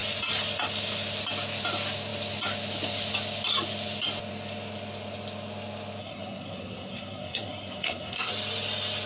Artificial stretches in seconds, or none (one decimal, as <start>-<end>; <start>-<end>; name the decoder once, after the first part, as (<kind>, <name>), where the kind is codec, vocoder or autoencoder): 6.0-8.3 (codec, SNAC)